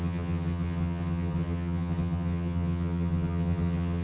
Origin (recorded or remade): remade